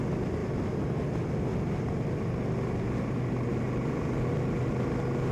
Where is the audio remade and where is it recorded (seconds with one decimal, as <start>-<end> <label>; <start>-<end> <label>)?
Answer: 0.0-5.3 recorded